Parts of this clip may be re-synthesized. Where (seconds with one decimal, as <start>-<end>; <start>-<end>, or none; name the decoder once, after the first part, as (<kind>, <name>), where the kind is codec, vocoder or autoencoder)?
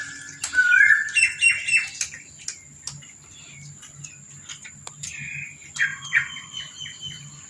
5.9-6.6 (vocoder, Vocos)